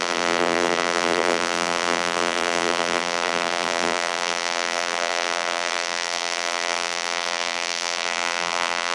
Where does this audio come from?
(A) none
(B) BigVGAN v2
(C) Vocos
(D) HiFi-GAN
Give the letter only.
B